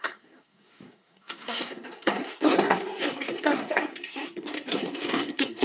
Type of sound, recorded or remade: remade